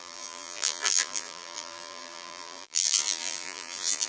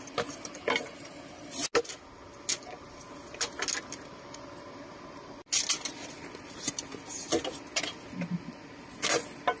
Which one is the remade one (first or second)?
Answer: first